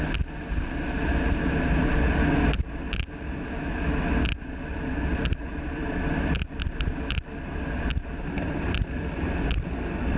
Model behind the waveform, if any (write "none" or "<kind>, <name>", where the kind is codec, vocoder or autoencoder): none